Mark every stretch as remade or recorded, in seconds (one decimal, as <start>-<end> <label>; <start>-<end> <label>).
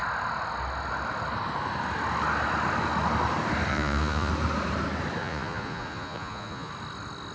0.0-3.7 recorded; 3.7-4.3 remade; 4.3-5.2 recorded; 5.2-6.7 remade; 6.7-7.3 recorded